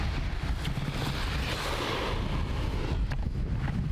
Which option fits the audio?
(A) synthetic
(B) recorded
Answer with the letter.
B